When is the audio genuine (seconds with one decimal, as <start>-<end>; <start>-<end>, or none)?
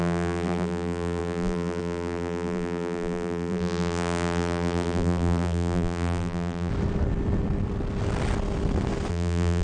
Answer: 6.7-9.1